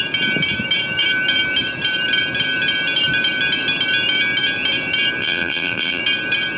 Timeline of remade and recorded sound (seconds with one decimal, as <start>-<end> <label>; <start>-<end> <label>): 0.0-5.2 recorded; 5.2-6.0 remade; 6.0-6.6 recorded